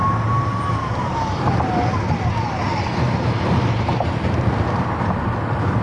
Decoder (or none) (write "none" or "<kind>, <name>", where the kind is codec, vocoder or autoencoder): none